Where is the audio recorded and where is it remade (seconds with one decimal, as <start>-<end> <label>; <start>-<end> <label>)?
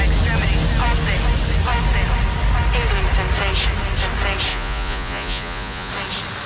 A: 0.0-4.5 recorded; 4.5-5.9 remade; 5.9-6.5 recorded